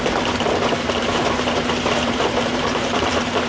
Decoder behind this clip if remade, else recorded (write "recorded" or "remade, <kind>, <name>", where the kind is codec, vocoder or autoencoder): remade, vocoder, BigVGAN v2